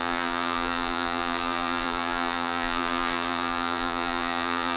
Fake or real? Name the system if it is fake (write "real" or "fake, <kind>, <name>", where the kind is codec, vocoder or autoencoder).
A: fake, vocoder, BigVGAN v2